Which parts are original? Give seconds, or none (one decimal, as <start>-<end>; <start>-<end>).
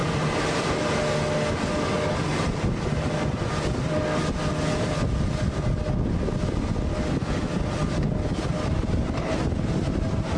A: 1.0-2.3; 4.4-10.4